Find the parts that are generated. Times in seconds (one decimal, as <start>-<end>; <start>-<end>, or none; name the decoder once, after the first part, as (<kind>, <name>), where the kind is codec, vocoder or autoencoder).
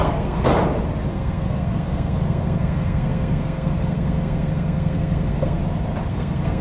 0.0-0.5 (codec, SNAC); 1.1-5.6; 6.1-6.6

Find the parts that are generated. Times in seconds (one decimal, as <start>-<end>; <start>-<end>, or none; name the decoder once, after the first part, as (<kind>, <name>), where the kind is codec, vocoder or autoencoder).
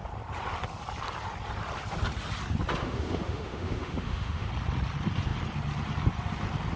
2.8-4.5 (autoencoder, DAC-VAE)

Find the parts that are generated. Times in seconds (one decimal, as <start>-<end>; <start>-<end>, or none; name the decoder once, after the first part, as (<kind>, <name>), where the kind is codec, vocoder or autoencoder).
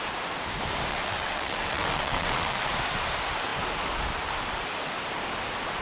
0.9-2.7 (vocoder, WaveNeXt)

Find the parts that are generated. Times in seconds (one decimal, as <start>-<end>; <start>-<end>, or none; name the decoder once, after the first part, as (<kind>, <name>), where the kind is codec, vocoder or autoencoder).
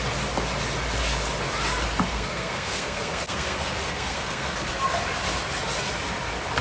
2.1-4.7 (codec, SNAC)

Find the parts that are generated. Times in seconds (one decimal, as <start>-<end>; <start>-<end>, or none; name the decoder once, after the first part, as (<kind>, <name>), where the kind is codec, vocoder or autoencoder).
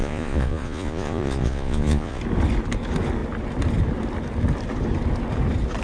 0.0-2.2 (vocoder, Vocos)